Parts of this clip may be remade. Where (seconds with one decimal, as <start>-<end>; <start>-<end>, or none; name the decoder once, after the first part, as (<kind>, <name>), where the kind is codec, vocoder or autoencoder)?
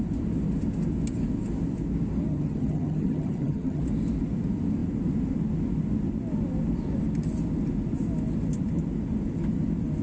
2.3-3.8 (vocoder, HiFi-GAN)